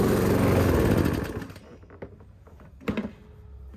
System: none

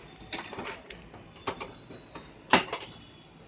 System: none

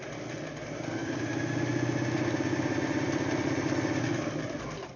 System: none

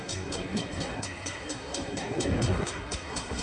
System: codec, SNAC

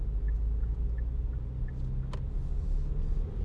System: none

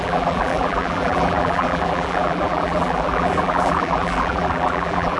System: vocoder, BigVGAN v2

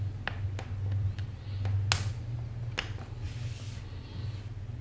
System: none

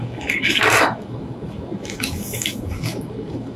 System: codec, DAC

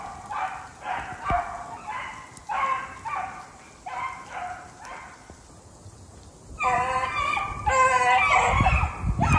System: none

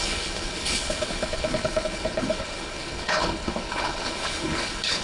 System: codec, HILCodec